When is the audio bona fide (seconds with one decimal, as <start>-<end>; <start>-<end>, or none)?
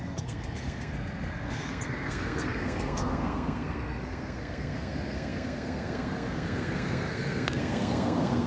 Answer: none